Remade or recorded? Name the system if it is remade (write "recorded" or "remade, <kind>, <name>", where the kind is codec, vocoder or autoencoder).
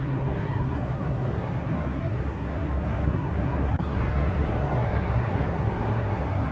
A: remade, codec, SNAC